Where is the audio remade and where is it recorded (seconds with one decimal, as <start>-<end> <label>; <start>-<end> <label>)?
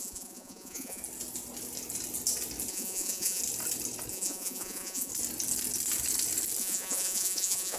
0.0-1.0 remade; 1.0-2.7 recorded; 2.7-3.4 remade; 3.4-4.1 recorded; 4.1-5.1 remade; 5.1-6.6 recorded; 6.6-7.8 remade